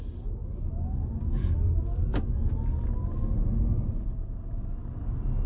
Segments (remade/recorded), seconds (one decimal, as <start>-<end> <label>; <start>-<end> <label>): 0.0-5.5 recorded